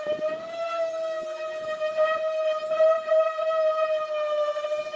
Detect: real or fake real